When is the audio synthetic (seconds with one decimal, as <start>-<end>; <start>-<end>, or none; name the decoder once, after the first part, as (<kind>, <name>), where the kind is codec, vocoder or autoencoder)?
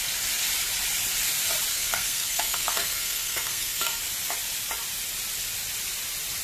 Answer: 1.7-4.0 (codec, SNAC)